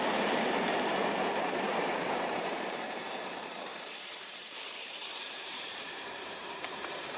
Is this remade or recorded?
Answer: remade